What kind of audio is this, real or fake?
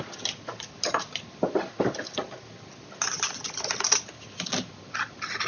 real